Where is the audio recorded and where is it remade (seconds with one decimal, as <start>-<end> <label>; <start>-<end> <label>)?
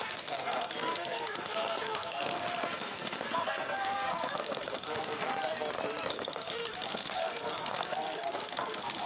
0.0-5.3 remade; 5.3-6.1 recorded; 6.1-9.1 remade